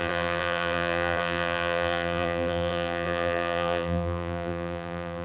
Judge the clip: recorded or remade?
remade